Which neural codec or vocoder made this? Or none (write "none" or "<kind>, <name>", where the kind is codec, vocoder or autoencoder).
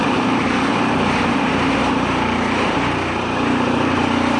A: vocoder, BigVGAN v2